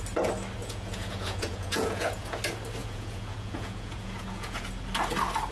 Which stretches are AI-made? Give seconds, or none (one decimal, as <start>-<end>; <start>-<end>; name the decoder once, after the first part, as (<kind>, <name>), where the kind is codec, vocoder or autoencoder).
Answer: 0.6-2.4 (vocoder, Vocos); 2.8-4.7